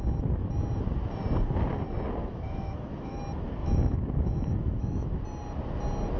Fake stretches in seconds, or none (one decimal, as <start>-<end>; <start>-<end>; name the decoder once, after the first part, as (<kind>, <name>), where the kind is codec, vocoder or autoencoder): 2.2-3.2 (autoencoder, DAC-VAE); 3.6-5.2